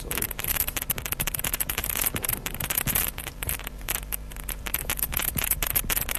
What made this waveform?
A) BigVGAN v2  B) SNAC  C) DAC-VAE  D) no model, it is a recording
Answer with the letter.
A